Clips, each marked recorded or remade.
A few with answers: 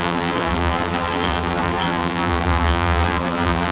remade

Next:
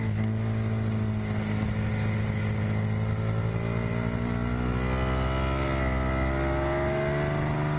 recorded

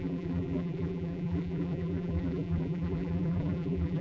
remade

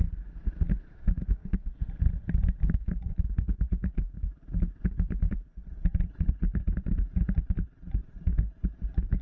remade